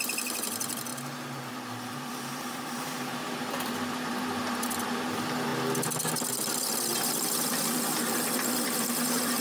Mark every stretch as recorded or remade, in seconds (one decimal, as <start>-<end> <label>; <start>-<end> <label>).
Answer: 0.0-0.9 remade; 0.9-1.5 recorded; 1.5-5.5 remade; 5.5-6.6 recorded; 6.6-9.4 remade